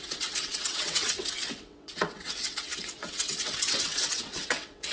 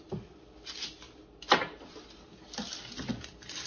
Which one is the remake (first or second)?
first